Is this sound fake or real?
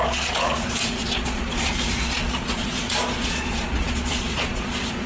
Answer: fake